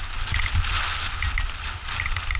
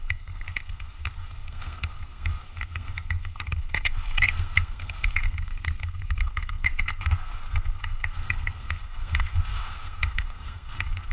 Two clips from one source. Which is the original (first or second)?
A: first